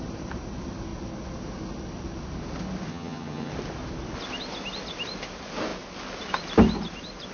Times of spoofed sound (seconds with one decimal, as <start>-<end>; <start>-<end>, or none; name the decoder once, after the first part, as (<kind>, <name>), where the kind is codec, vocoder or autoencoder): 2.9-3.5 (vocoder, HiFi-GAN)